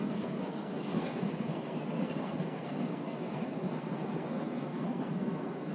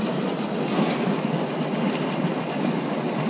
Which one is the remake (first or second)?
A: first